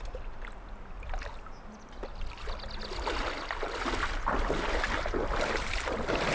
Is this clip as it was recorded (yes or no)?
yes